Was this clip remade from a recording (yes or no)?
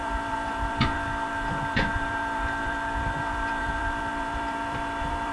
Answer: yes